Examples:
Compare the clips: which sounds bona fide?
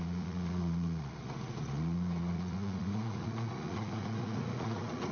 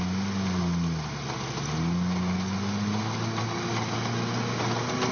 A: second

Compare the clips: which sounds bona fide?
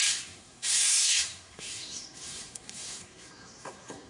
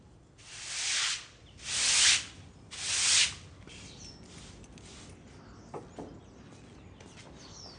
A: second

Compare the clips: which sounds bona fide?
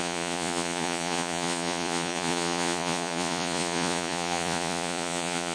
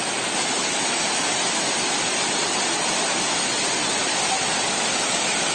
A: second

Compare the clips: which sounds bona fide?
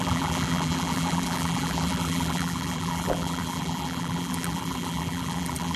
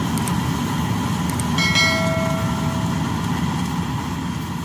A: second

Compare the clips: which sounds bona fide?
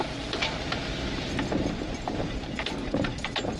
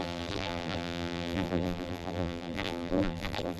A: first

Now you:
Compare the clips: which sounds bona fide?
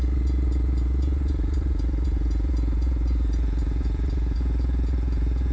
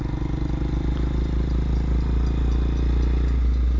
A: second